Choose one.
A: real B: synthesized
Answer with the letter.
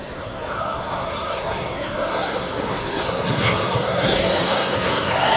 B